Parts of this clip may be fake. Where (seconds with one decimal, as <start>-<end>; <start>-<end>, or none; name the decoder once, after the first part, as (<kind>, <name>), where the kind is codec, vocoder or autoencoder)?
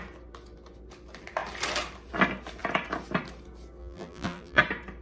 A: 3.8-4.6 (vocoder, BigVGAN v2)